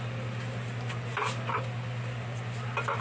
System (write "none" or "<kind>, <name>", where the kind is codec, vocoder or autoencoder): none